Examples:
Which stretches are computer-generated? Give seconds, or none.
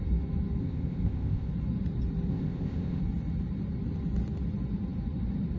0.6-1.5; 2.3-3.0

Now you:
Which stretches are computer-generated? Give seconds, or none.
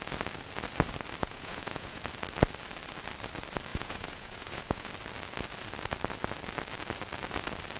1.2-2.0; 3.7-4.9